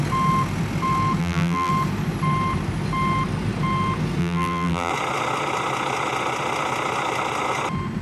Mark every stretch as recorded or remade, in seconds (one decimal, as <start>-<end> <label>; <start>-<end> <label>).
0.0-1.2 recorded; 1.2-1.7 remade; 1.7-4.2 recorded; 4.2-4.9 remade; 4.9-8.0 recorded